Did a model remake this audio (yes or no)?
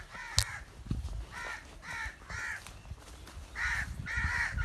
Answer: no